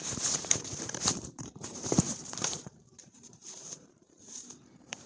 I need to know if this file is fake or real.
fake